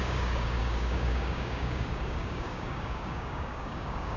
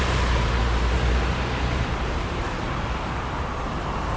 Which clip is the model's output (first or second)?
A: first